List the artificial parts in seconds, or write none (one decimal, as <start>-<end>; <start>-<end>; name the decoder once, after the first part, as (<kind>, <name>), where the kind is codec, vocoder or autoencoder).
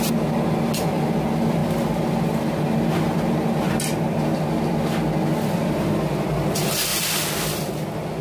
6.9-8.2 (vocoder, BigVGAN v2)